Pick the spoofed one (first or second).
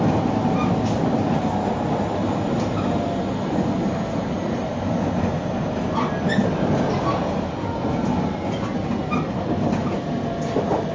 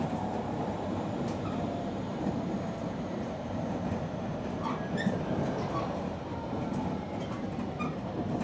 second